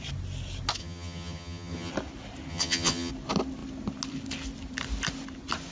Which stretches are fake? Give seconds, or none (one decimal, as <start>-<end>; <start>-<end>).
0.8-1.9; 2.5-3.1